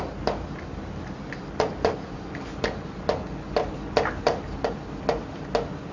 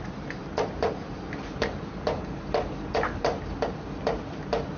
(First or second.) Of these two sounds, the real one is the first